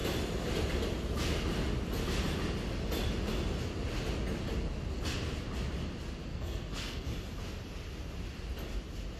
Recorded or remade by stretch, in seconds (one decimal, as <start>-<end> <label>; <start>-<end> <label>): 0.0-6.3 recorded; 6.3-7.1 remade; 7.1-9.2 recorded